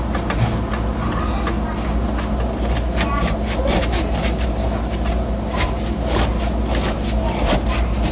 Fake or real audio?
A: real